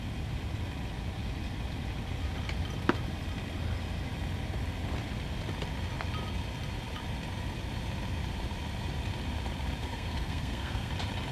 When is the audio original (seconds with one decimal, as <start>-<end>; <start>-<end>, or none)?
0.0-9.8; 10.9-11.3